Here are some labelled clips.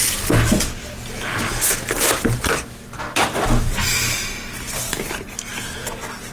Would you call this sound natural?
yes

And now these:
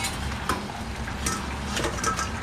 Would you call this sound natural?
yes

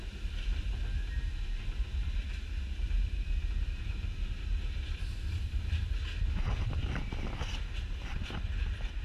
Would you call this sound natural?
yes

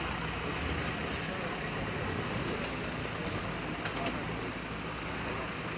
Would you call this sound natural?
yes